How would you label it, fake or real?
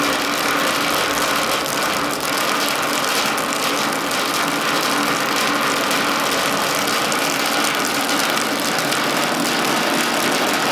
real